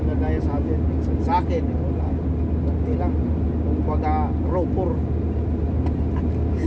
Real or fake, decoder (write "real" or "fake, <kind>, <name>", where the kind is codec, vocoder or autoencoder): real